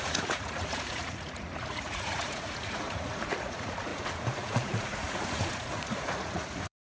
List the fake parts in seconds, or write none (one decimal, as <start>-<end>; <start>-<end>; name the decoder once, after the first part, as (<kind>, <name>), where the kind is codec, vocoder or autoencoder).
0.0-7.0 (vocoder, Vocos)